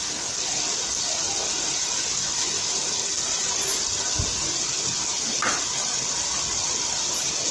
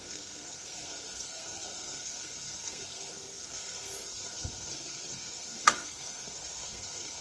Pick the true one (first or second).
first